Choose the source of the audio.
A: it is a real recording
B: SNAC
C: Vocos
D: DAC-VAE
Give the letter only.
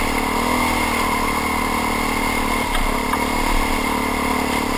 A